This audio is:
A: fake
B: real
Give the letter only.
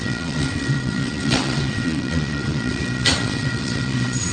A